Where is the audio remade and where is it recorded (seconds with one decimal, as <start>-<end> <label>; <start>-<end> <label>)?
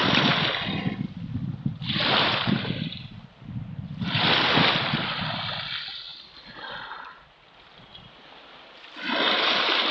0.0-0.6 remade; 0.6-6.1 recorded; 6.1-7.5 remade; 7.5-7.9 recorded; 7.9-9.5 remade; 9.5-9.9 recorded